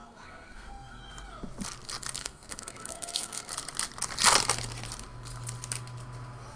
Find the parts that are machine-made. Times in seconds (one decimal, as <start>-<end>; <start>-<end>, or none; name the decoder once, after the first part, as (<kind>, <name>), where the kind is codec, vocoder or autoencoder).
0.0-1.0 (codec, SNAC); 2.2-3.5